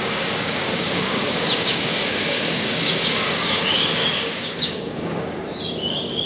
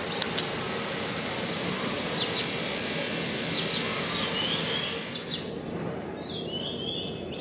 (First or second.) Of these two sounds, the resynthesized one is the first